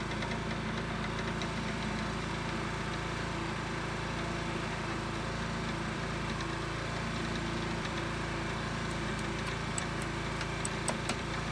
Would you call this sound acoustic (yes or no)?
no